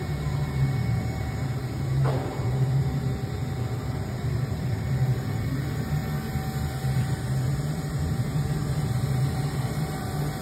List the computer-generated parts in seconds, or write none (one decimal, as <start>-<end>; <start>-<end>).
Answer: 0.0-6.0; 6.8-10.4